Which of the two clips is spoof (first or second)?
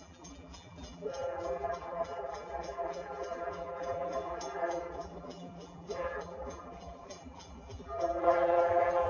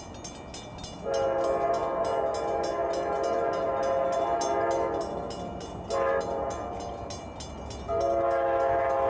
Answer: first